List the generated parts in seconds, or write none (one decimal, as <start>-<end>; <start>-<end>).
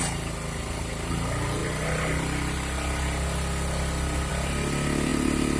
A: none